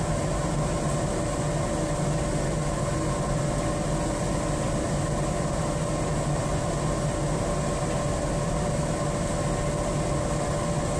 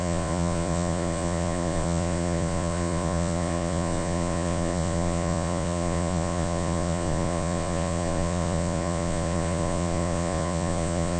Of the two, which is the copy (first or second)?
second